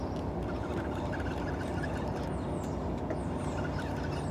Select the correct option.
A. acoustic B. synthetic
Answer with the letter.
A